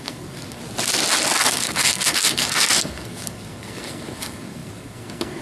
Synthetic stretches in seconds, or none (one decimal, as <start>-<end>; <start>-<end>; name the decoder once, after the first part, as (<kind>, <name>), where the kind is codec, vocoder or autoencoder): 0.0-0.6 (codec, SNAC); 1.4-5.4